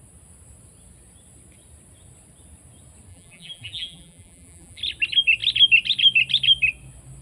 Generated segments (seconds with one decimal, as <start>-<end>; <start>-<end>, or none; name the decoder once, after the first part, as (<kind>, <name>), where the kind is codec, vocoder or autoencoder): 3.1-4.8 (vocoder, BigVGAN v2)